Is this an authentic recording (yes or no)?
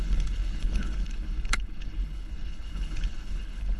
no